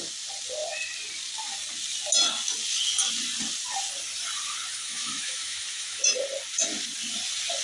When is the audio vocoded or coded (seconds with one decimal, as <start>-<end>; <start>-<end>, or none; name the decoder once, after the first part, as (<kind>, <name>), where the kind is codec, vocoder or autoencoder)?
4.7-6.0 (autoencoder, DAC-VAE)